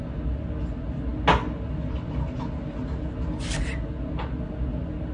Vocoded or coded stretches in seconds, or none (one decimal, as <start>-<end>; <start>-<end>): none